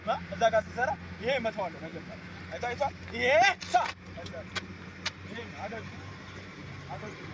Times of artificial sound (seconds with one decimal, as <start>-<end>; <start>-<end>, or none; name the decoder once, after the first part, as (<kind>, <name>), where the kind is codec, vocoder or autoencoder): 6.6-7.3 (vocoder, BigVGAN v2)